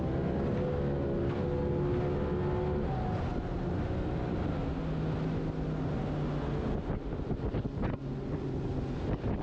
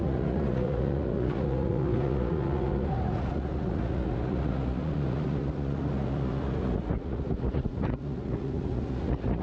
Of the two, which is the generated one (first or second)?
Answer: second